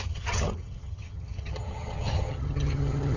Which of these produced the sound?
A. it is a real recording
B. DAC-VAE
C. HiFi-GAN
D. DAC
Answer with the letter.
C